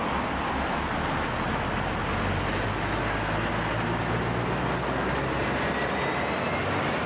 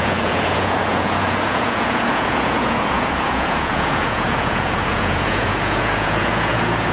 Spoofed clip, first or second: second